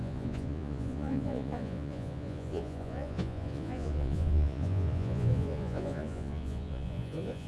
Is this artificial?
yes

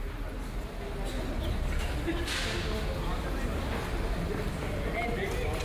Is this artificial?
no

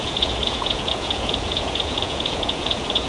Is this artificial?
yes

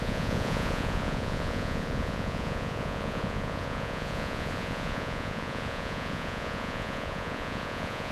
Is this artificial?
yes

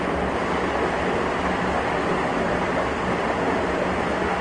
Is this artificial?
no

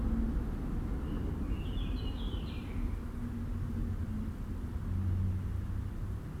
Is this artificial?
no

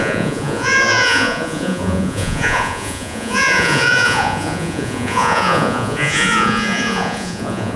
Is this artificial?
yes